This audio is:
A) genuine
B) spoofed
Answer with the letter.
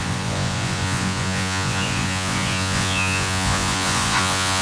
B